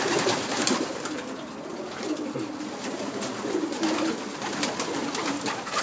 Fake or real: real